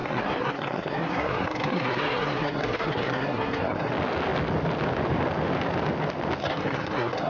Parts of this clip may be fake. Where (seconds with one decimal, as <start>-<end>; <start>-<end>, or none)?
0.0-3.9; 6.4-7.3

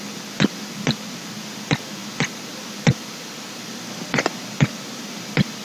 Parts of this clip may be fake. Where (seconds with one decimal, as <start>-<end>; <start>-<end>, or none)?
none

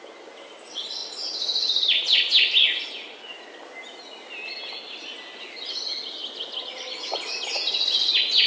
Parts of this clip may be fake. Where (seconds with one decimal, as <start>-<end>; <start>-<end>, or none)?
none

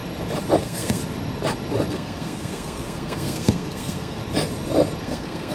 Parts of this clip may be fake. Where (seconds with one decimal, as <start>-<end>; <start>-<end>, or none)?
0.6-1.0; 1.9-4.2; 5.0-5.5

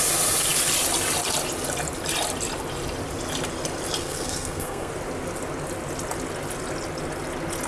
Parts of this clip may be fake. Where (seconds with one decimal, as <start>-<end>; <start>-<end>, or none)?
4.0-4.9

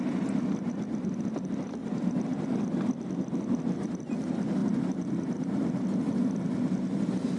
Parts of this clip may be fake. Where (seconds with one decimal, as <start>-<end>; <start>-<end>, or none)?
none